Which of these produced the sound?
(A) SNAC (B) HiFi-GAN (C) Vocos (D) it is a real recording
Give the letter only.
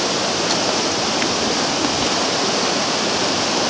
D